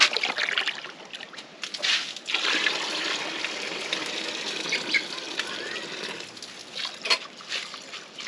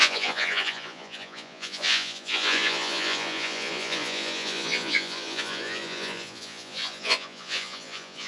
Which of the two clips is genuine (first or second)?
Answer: first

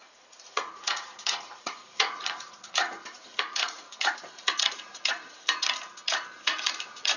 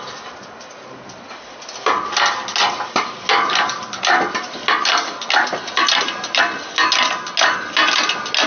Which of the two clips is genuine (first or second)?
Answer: second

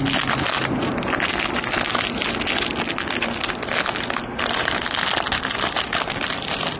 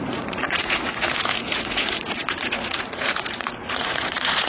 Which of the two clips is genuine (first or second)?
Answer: first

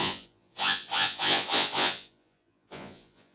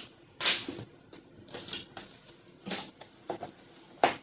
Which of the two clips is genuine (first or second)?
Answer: second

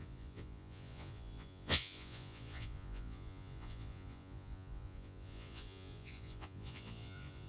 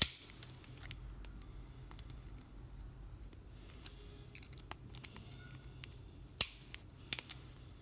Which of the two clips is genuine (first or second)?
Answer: second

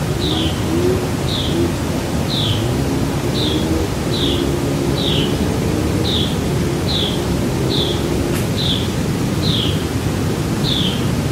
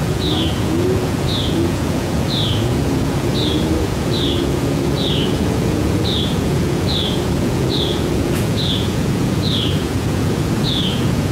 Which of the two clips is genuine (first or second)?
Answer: first